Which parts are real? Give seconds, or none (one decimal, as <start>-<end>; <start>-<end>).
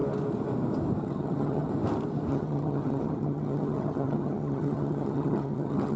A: 0.0-1.0; 1.7-2.3